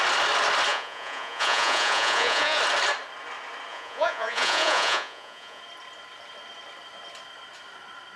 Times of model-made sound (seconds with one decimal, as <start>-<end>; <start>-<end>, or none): 0.7-2.6; 3.7-5.6